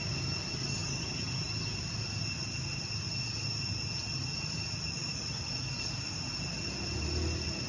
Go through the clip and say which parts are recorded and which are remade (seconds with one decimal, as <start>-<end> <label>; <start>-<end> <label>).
0.0-7.7 recorded